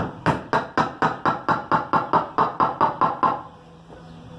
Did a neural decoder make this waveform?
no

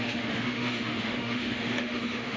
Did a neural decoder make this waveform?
yes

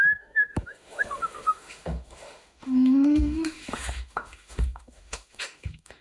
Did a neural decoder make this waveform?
yes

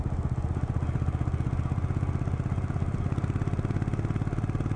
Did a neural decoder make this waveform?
no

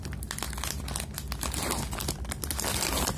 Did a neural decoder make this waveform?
no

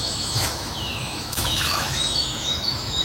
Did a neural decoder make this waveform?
yes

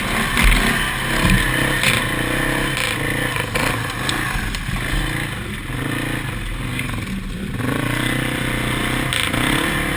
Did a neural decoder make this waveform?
no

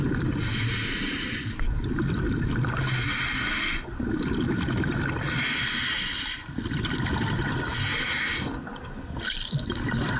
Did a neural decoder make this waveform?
no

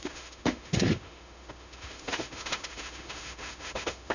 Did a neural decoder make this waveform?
yes